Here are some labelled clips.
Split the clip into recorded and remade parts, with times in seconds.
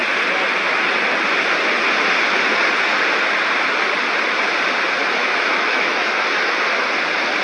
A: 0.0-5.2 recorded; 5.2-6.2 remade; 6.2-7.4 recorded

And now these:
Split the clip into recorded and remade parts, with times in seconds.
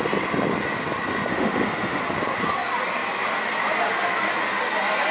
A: 0.0-1.3 recorded; 1.3-2.0 remade; 2.0-5.1 recorded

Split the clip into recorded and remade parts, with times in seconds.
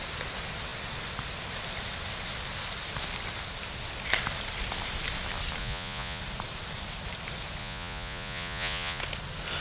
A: 0.0-5.6 recorded; 5.6-6.2 remade; 6.2-7.6 recorded; 7.6-9.0 remade; 9.0-9.6 recorded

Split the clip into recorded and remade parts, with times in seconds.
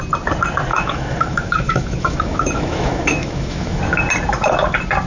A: 0.0-0.7 recorded; 0.7-3.8 remade; 3.8-5.1 recorded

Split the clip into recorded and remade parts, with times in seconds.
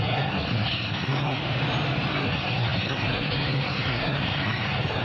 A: 0.0-1.4 remade; 1.4-2.1 recorded; 2.1-5.0 remade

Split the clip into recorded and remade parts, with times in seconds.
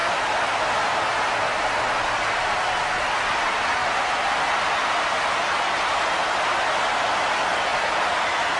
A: 0.0-8.6 recorded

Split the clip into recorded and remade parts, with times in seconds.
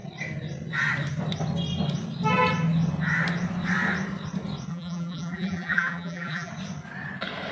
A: 0.0-4.7 recorded; 4.7-6.5 remade; 6.5-7.5 recorded